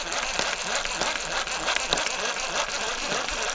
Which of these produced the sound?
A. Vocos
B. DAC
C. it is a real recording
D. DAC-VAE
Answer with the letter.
C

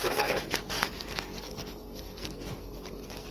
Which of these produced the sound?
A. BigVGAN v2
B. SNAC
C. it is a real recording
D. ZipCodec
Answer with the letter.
B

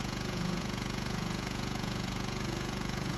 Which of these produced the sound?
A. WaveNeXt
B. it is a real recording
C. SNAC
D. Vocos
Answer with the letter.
D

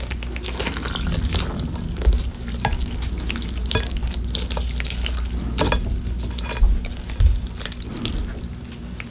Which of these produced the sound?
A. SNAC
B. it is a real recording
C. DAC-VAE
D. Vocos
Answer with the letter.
B